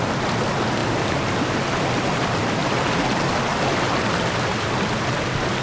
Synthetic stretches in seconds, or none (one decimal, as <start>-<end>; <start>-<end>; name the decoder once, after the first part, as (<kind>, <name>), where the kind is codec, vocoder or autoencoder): 0.8-2.2 (vocoder, BigVGAN v2); 2.6-5.1